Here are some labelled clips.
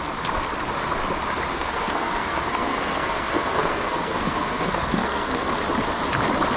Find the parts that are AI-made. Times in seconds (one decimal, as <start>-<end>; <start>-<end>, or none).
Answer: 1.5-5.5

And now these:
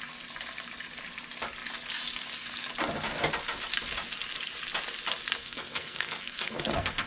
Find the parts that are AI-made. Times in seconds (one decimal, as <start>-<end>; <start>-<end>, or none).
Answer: 5.4-7.1

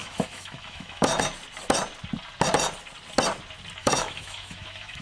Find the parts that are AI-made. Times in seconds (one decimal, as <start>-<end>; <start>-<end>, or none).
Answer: 0.0-1.2; 3.8-5.0

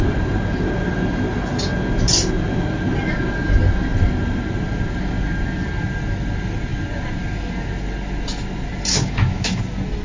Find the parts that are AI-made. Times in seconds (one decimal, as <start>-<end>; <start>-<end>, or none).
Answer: 8.9-9.6

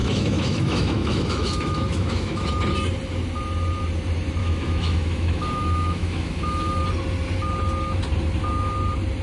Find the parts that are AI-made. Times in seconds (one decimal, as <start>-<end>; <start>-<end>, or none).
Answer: 0.0-2.5; 4.4-6.8